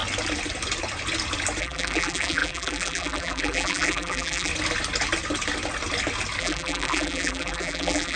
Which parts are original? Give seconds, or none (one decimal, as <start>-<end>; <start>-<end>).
0.0-1.6; 4.5-6.4